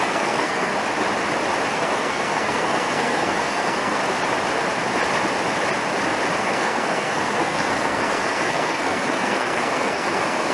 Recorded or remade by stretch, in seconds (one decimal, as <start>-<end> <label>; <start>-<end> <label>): 0.0-0.7 remade; 0.7-1.7 recorded; 1.7-4.0 remade; 4.0-6.4 recorded; 6.4-10.5 remade